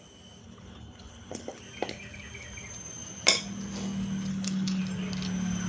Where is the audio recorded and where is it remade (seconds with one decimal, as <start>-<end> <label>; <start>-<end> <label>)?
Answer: 0.0-0.4 recorded; 0.4-1.6 remade; 1.6-4.3 recorded; 4.3-4.8 remade; 4.8-5.7 recorded